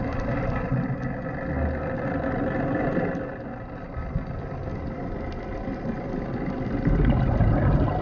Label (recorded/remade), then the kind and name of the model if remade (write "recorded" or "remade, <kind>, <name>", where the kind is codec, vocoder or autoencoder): recorded